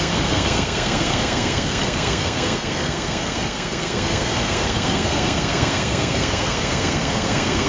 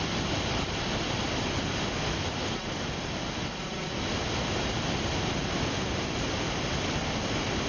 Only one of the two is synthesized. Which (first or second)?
first